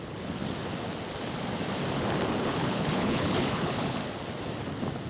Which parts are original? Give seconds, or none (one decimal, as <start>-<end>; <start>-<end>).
0.4-2.4; 4.0-5.1